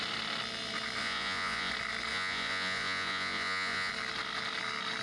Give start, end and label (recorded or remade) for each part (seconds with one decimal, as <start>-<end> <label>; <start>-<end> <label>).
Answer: 0.0-1.0 recorded; 1.0-1.7 remade; 1.7-2.1 recorded; 2.1-3.9 remade; 3.9-5.0 recorded